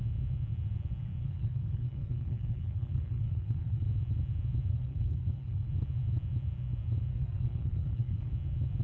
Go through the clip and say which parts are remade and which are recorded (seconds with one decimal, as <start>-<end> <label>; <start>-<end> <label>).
0.0-1.2 recorded; 1.2-3.8 remade; 3.8-4.7 recorded; 4.7-5.7 remade; 5.7-7.1 recorded; 7.1-8.3 remade; 8.3-8.8 recorded